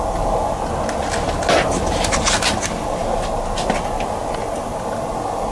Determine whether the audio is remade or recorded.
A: recorded